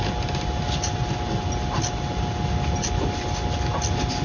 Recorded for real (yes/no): yes